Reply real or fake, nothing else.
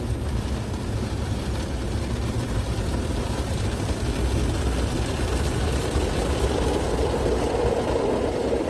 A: real